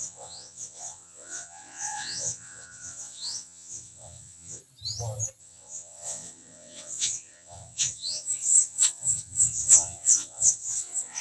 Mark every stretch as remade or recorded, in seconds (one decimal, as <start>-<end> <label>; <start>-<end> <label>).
0.0-4.6 remade; 4.6-5.4 recorded; 5.4-11.2 remade